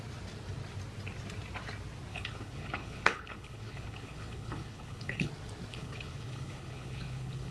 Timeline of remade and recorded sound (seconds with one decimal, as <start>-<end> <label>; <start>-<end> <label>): 0.0-2.1 recorded; 2.1-5.3 remade; 5.3-5.7 recorded; 5.7-7.5 remade